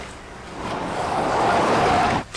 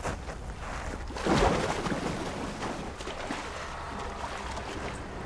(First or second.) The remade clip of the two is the first